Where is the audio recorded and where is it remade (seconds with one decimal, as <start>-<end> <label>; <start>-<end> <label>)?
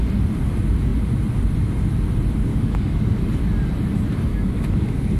0.0-2.5 recorded; 2.5-3.1 remade; 3.1-4.3 recorded; 4.3-5.2 remade